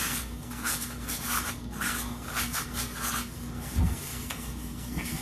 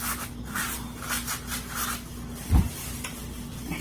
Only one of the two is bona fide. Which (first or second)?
second